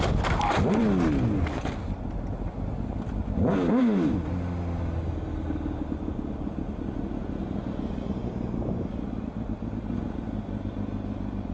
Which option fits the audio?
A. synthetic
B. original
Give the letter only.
B